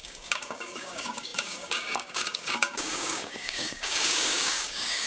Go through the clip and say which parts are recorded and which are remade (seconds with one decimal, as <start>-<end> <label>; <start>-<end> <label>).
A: 0.0-5.1 remade